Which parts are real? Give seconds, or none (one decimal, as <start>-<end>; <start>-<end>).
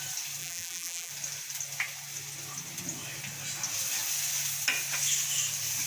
0.0-0.4; 1.1-5.9